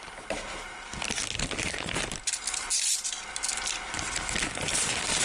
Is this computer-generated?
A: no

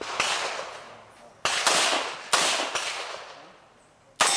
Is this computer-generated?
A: no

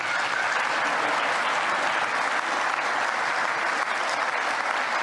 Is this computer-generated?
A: no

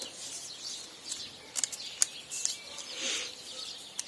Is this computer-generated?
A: no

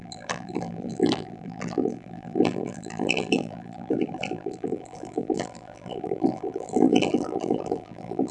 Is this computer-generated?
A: yes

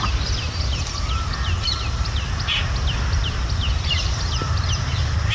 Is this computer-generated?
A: no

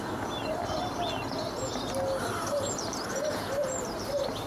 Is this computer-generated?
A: no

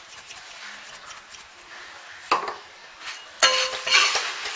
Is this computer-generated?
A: no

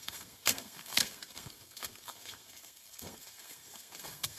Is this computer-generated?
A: yes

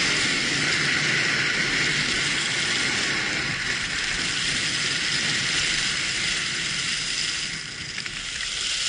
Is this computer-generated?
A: no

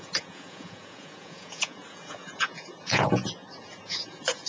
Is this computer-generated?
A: yes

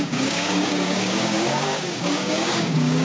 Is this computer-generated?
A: yes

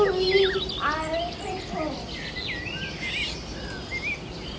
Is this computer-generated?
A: no